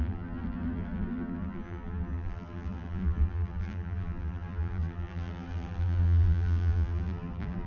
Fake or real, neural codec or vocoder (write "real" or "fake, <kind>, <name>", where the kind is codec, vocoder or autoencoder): fake, vocoder, BigVGAN v2